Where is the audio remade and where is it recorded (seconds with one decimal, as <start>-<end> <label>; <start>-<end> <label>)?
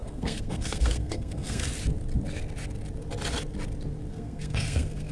0.0-1.6 remade; 1.6-4.1 recorded; 4.1-5.1 remade